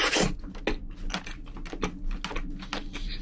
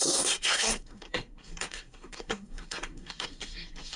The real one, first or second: first